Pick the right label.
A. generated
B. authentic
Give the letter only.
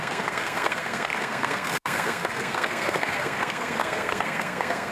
A